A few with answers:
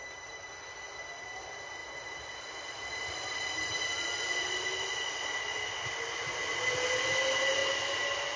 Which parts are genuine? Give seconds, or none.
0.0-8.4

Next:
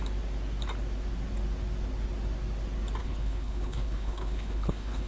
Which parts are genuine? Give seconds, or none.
0.0-3.0

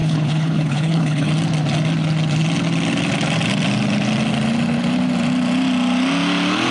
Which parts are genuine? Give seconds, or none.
1.3-6.7

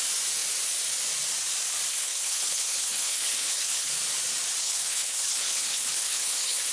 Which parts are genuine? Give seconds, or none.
0.0-1.9; 3.9-4.6